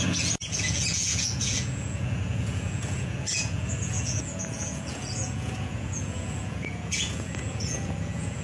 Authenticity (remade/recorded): remade